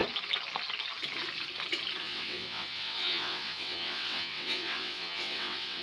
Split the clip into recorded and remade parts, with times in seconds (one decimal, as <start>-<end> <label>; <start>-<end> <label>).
0.0-2.0 recorded; 2.0-5.8 remade